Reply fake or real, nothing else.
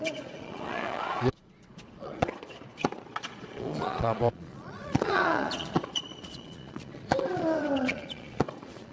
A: fake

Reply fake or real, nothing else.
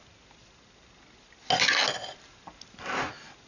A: real